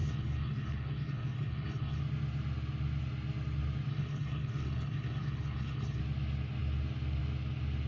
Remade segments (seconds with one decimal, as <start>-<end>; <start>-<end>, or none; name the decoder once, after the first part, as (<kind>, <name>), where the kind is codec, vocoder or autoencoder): 0.0-2.0 (codec, HILCodec); 3.9-6.0